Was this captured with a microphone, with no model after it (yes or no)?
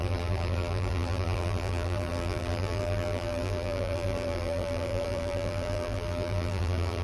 no